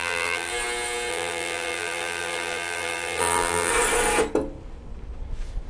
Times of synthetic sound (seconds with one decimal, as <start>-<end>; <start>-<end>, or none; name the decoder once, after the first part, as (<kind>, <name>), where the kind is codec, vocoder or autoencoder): 0.0-0.5 (vocoder, BigVGAN v2); 1.1-3.7